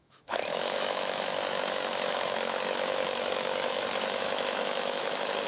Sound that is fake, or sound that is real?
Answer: fake